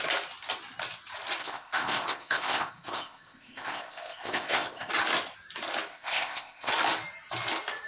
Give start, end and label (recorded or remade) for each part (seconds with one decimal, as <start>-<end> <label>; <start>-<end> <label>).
0.0-1.4 recorded; 1.4-4.9 remade; 4.9-5.9 recorded; 5.9-6.7 remade; 6.7-7.9 recorded